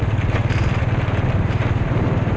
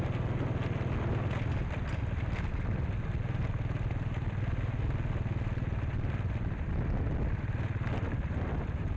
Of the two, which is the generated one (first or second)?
first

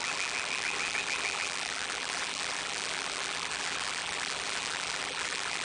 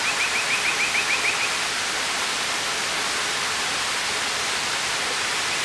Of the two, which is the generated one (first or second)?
first